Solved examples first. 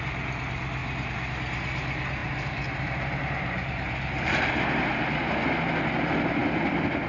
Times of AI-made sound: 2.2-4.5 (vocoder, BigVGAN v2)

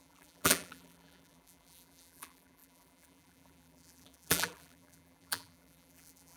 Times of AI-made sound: 0.0-6.4 (vocoder, BigVGAN v2)